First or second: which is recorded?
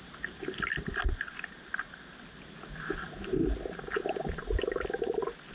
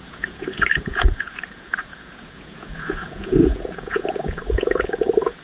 first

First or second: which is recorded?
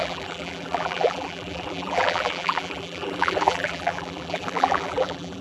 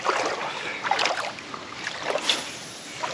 second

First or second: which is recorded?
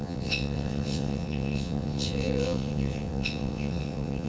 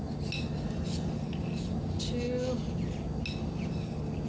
second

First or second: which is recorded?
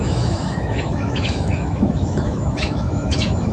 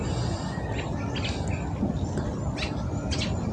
second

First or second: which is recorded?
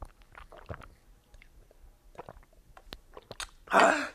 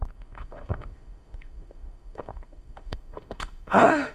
first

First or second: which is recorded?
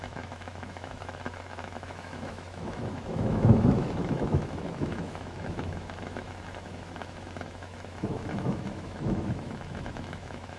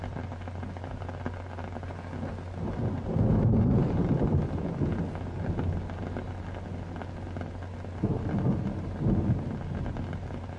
second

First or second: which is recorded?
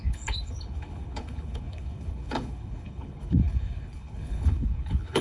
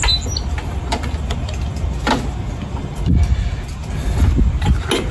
second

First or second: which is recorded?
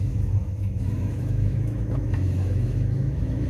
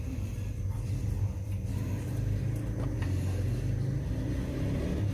second